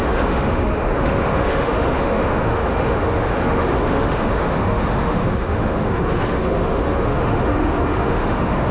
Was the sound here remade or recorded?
remade